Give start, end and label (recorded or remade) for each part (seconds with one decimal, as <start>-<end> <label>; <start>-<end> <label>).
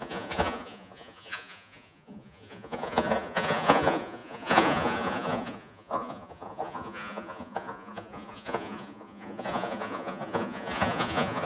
0.0-11.5 remade